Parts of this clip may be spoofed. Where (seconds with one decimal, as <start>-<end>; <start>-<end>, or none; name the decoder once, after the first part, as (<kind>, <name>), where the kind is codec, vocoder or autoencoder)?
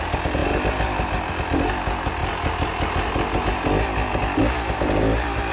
none